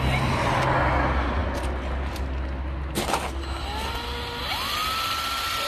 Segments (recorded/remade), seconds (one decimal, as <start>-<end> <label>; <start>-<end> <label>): 0.0-5.7 recorded